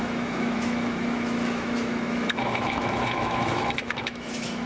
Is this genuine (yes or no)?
no